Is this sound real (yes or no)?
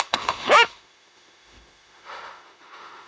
no